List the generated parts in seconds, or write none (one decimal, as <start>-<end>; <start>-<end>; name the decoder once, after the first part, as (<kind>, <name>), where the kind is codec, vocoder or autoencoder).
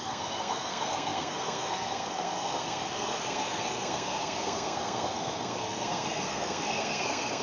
0.0-7.4 (codec, SNAC)